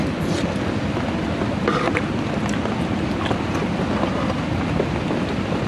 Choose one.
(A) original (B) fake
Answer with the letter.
A